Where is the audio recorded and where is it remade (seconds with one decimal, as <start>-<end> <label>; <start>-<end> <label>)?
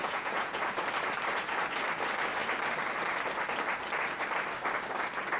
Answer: 0.0-0.6 remade; 0.6-5.4 recorded